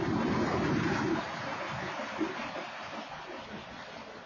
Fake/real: real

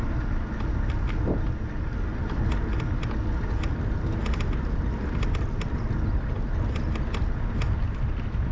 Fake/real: real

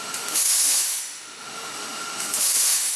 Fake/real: fake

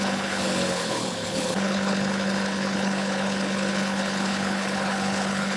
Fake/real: fake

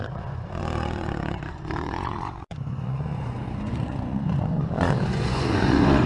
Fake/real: fake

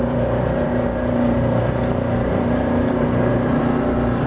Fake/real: fake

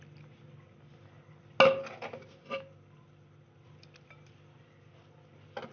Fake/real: real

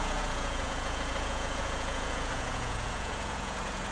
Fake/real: fake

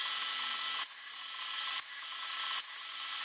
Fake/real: real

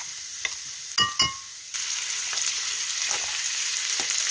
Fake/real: real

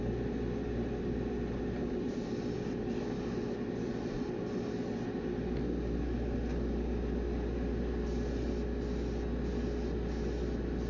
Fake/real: real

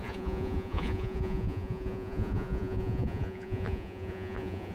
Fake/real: fake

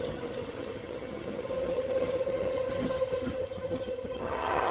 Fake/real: fake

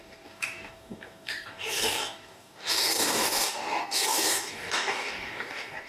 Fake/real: fake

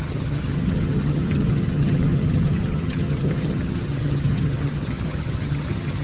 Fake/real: fake